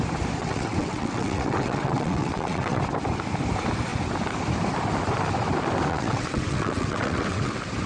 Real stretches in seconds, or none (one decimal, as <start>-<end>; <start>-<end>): 0.0-0.4; 2.8-5.9; 7.5-7.9